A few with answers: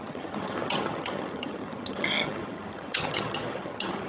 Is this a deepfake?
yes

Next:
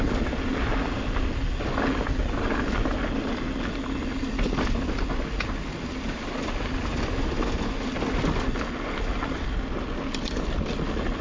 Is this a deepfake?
no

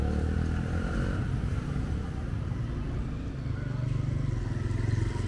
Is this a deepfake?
no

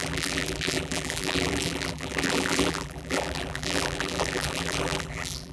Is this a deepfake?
yes